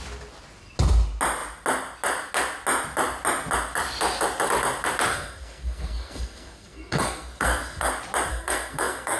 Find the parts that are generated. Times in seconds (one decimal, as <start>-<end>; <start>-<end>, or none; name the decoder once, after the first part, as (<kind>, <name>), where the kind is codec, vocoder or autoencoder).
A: 5.1-7.9 (codec, SNAC); 8.3-9.2